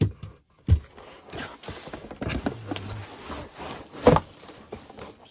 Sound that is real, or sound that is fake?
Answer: real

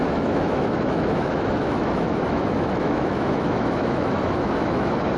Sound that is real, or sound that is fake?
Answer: fake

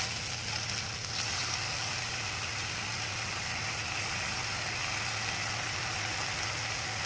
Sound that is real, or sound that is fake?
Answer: real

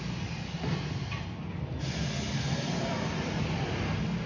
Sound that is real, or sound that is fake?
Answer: real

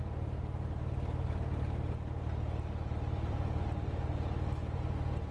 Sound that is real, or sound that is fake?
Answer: real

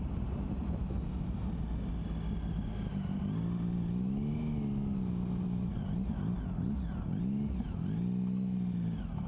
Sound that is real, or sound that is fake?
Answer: real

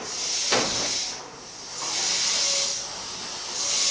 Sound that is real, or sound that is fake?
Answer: real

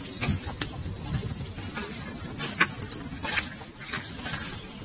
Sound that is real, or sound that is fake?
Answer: real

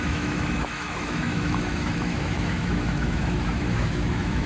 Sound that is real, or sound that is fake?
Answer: fake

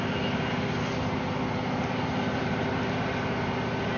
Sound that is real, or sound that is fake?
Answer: real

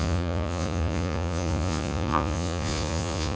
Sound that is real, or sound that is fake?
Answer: fake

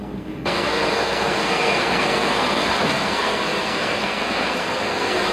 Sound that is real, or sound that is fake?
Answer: fake